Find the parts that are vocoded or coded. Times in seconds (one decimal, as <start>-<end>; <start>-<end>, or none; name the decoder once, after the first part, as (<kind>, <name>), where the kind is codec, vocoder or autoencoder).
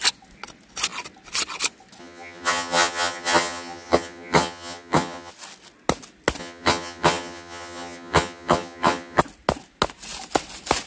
2.0-5.3 (vocoder, HiFi-GAN); 6.4-9.2